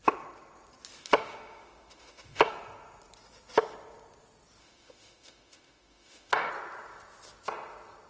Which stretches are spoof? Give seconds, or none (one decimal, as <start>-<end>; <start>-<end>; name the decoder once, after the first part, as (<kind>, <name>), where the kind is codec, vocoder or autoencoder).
1.0-2.5 (autoencoder, DAC-VAE); 4.6-6.5